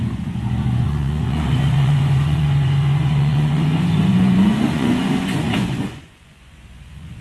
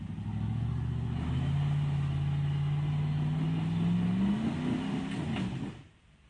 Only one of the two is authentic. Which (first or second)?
second